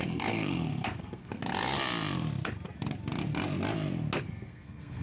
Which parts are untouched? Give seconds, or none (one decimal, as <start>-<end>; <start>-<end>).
1.4-4.2

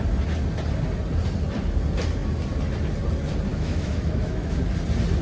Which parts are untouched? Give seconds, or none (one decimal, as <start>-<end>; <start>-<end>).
0.0-3.5; 4.6-5.2

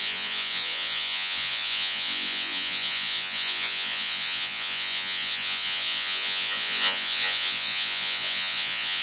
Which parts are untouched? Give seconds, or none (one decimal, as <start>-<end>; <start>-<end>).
none

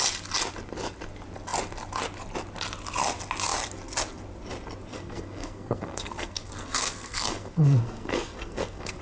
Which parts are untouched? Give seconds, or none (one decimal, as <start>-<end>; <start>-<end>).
0.0-4.9

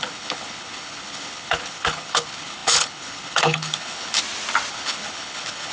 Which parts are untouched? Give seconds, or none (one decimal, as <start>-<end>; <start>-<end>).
4.2-4.7

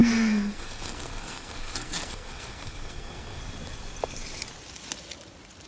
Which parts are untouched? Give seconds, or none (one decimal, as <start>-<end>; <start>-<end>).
3.4-5.7

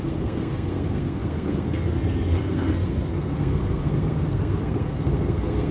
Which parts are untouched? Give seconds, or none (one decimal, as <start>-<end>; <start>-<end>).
none